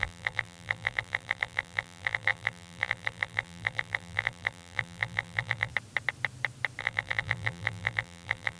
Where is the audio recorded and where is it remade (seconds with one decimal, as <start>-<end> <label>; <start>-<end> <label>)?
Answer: 0.0-5.7 remade; 5.7-6.8 recorded; 6.8-8.6 remade